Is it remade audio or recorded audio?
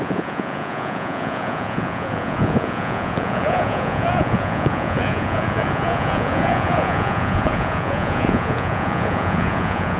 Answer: remade